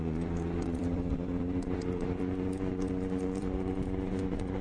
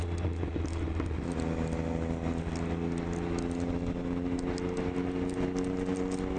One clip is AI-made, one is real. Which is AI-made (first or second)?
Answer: first